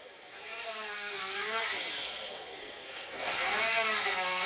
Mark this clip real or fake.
fake